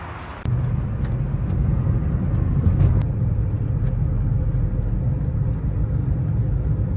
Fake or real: real